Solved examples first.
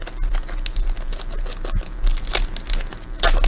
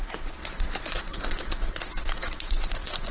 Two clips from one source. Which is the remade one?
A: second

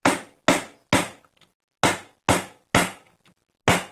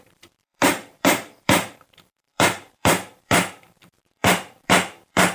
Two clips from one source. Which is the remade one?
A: second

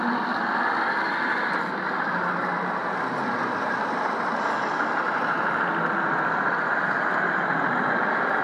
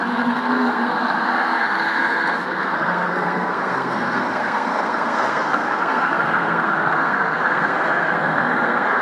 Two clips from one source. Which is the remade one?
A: second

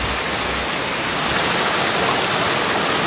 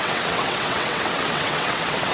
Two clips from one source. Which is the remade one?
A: second